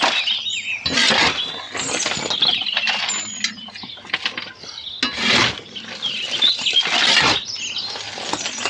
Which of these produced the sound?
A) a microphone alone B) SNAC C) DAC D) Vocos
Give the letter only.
A